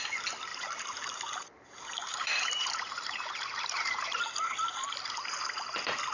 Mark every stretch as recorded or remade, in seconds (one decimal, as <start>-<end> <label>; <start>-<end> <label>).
0.0-0.5 recorded; 0.5-4.2 remade; 4.2-6.1 recorded